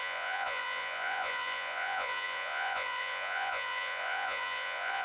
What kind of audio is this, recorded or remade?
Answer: remade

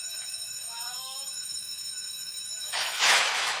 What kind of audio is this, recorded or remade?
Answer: remade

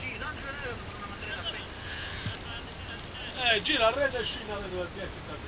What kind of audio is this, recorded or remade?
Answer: recorded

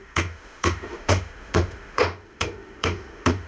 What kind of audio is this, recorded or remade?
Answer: remade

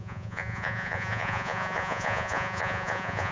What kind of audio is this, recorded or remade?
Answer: remade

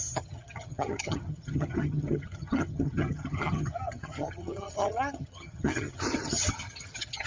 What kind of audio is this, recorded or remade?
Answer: remade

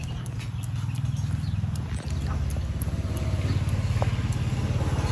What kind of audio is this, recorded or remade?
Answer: recorded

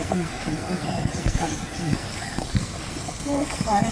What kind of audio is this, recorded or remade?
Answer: remade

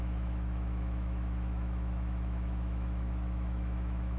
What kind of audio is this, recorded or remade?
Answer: remade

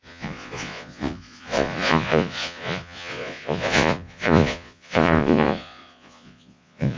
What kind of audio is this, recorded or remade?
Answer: remade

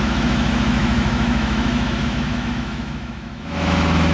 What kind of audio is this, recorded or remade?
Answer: remade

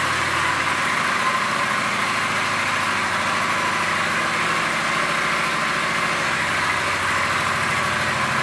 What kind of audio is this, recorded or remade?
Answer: recorded